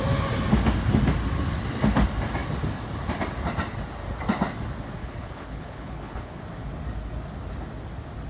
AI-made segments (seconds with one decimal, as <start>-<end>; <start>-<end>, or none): 5.0-6.4

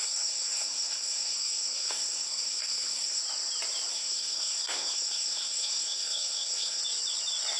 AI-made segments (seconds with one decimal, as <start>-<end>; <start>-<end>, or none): 0.0-3.2; 3.9-6.8

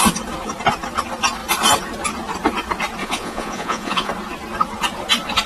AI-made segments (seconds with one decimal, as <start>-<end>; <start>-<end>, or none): 3.0-4.1

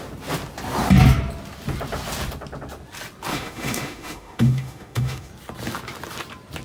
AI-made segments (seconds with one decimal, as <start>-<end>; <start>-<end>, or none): 3.3-5.3

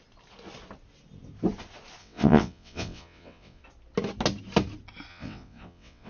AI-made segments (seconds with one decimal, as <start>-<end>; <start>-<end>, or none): 2.0-3.6; 5.1-6.1

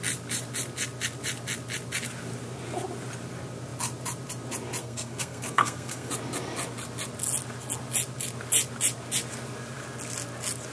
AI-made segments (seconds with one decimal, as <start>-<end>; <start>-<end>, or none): 4.8-6.1

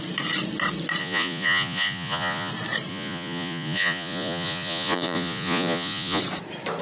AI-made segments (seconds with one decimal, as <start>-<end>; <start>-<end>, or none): 1.0-2.5; 2.9-6.2

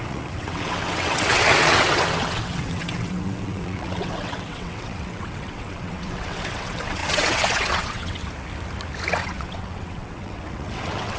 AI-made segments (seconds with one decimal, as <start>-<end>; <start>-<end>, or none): 0.0-8.2; 9.1-11.2